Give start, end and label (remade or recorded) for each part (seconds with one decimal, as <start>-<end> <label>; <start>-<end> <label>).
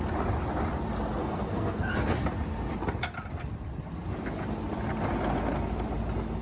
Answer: 0.0-1.2 recorded; 1.2-1.9 remade; 1.9-6.4 recorded